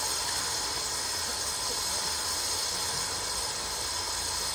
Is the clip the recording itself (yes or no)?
yes